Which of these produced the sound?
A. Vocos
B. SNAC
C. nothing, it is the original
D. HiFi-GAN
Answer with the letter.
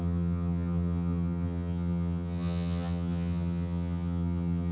D